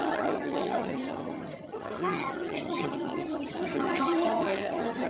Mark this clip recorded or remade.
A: remade